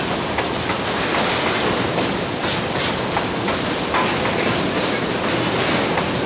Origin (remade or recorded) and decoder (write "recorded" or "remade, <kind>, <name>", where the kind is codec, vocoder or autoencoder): recorded